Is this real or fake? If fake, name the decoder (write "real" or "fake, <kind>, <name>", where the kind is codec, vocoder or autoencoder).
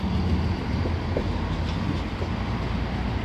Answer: real